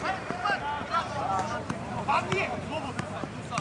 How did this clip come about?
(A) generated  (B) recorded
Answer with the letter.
A